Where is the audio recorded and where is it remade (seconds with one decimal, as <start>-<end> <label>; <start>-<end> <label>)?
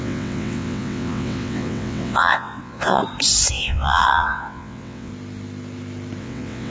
0.0-3.0 remade; 3.0-3.5 recorded; 3.5-5.1 remade; 5.1-6.2 recorded; 6.2-6.7 remade